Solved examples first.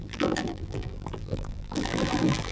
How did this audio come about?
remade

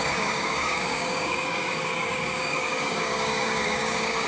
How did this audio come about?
remade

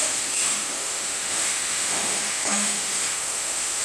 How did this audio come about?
remade